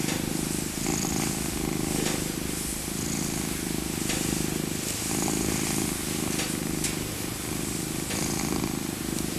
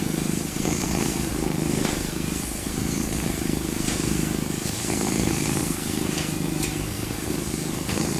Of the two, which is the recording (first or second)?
first